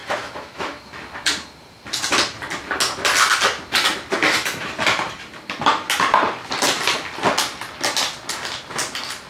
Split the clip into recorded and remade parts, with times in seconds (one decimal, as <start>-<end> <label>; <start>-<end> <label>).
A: 0.0-0.9 remade; 0.9-4.2 recorded; 4.2-4.7 remade; 4.7-9.3 recorded